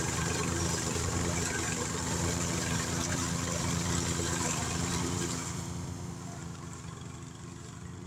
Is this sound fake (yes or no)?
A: yes